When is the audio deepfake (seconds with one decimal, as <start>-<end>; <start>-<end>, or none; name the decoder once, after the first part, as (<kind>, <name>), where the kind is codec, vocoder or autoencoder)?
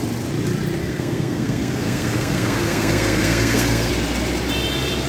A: 0.8-3.9 (codec, SNAC)